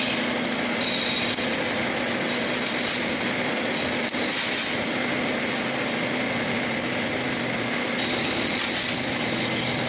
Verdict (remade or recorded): recorded